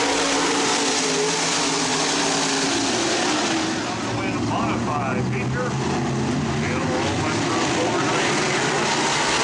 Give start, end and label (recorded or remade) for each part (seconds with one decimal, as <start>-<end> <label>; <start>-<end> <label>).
0.0-9.4 recorded